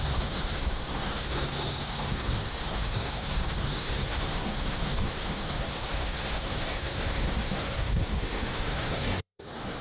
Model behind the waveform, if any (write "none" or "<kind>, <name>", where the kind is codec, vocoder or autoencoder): codec, SNAC